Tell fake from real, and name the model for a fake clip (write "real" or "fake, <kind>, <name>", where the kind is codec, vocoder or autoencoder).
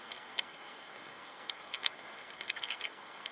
fake, codec, SNAC